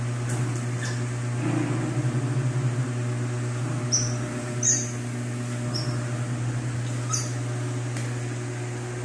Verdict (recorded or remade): recorded